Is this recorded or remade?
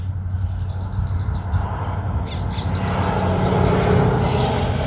recorded